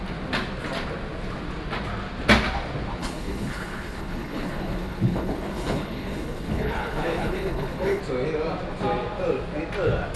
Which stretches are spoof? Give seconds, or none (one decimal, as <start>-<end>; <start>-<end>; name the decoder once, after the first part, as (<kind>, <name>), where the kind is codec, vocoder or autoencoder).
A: 3.0-8.0 (codec, HILCodec)